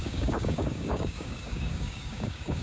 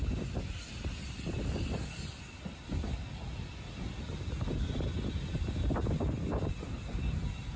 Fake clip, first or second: first